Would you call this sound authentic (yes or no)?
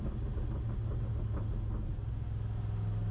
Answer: yes